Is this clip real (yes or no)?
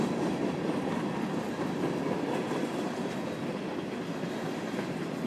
yes